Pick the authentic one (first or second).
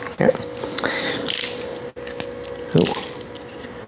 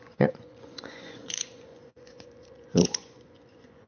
first